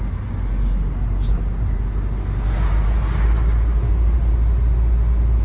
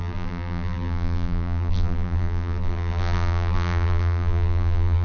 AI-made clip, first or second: second